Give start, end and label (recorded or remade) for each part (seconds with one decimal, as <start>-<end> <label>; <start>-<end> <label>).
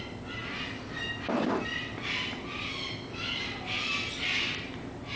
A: 0.0-5.2 recorded